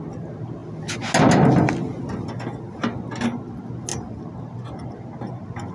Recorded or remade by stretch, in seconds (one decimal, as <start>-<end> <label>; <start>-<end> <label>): 0.0-5.7 recorded